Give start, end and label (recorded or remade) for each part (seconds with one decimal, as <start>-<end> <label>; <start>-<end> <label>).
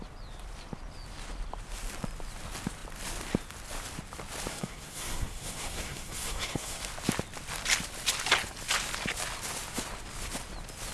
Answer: 0.0-4.5 recorded; 4.5-6.8 remade; 6.8-10.9 recorded